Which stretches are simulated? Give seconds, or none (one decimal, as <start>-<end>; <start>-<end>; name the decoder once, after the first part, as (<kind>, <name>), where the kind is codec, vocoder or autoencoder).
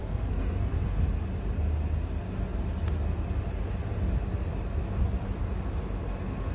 0.0-0.7 (codec, SNAC)